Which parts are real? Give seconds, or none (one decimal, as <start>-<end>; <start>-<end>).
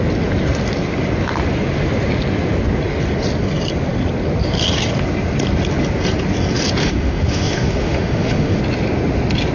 0.0-6.8; 8.6-9.5